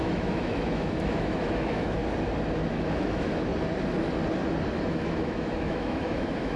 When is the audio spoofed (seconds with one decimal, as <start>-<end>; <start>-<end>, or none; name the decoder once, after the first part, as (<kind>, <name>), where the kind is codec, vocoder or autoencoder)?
0.0-2.0 (autoencoder, DAC-VAE); 2.7-3.5; 4.8-6.6